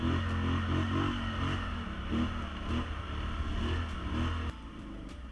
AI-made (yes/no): no